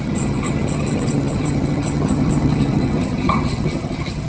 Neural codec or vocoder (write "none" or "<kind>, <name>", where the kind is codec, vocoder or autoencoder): vocoder, HiFi-GAN